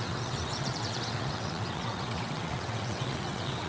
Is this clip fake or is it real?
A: fake